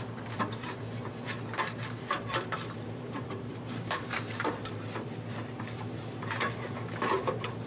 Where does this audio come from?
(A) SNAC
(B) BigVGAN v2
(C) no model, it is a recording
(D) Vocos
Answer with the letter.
B